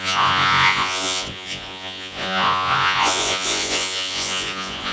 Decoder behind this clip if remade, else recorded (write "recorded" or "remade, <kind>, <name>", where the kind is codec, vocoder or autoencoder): remade, vocoder, Vocos